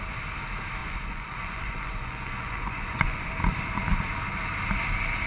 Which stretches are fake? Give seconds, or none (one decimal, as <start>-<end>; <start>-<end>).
0.8-3.3